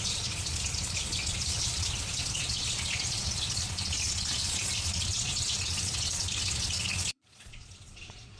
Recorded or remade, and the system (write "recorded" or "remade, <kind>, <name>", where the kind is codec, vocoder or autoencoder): remade, vocoder, Vocos